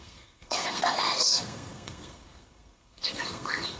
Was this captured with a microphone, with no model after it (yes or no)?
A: no